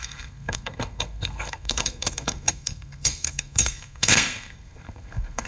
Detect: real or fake fake